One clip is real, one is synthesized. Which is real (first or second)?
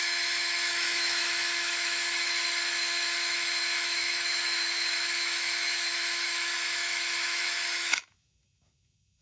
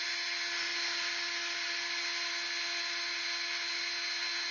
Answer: second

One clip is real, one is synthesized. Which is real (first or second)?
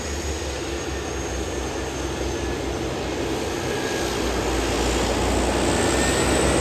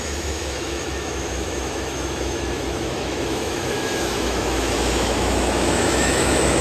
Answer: first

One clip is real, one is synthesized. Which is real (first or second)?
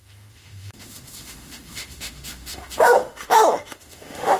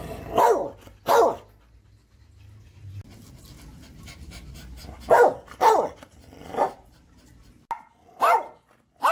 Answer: second